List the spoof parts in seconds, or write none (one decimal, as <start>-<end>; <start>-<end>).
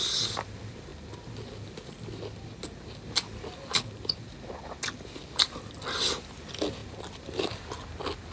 none